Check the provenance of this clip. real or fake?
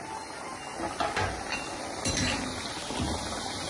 real